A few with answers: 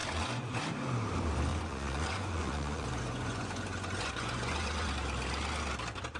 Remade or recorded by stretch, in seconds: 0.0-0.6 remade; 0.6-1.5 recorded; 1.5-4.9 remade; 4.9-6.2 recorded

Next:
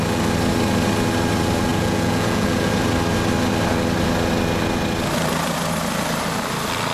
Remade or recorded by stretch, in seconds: 0.0-1.7 recorded; 1.7-2.7 remade; 2.7-6.9 recorded

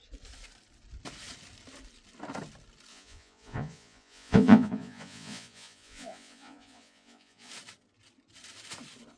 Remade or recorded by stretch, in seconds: 0.0-2.9 recorded; 2.9-7.5 remade; 7.5-9.2 recorded

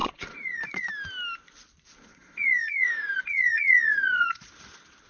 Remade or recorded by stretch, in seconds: 0.0-0.9 remade; 0.9-2.1 recorded; 2.1-4.5 remade; 4.5-5.1 recorded

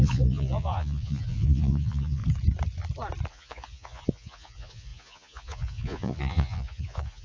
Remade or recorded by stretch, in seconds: 0.0-2.2 remade; 2.2-3.3 recorded; 3.3-7.2 remade

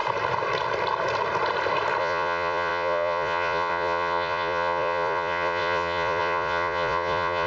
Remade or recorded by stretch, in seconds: 0.0-2.0 recorded; 2.0-7.5 remade

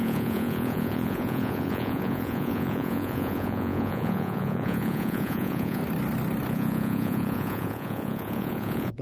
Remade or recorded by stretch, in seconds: 0.0-5.8 remade; 5.8-6.5 recorded; 6.5-9.0 remade